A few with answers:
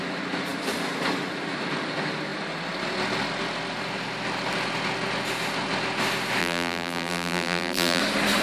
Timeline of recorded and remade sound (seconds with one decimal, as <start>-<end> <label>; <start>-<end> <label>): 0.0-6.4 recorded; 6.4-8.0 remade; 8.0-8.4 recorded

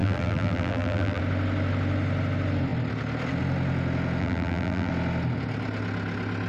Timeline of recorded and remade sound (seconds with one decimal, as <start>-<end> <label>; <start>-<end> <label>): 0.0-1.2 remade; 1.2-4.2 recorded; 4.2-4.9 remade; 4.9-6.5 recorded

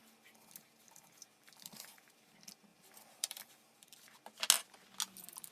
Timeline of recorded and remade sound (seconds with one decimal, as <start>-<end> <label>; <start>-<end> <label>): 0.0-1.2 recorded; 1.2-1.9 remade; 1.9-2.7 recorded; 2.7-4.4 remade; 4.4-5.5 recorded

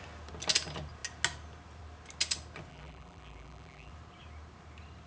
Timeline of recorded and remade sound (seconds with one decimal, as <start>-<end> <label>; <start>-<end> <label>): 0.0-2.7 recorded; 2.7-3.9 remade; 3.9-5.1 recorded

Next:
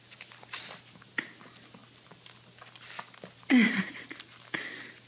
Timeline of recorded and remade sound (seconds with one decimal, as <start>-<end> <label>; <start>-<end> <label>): 0.0-5.1 recorded

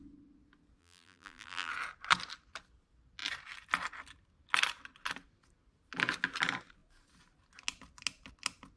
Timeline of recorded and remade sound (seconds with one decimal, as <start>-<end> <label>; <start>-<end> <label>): 0.0-0.8 recorded; 0.8-1.7 remade; 1.7-8.8 recorded

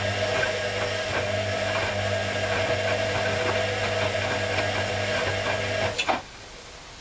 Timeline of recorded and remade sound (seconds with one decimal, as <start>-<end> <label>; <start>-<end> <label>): 0.0-7.0 recorded